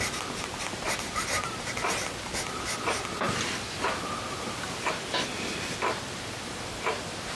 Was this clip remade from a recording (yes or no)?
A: no